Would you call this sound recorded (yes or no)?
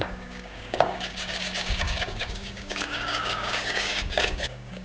no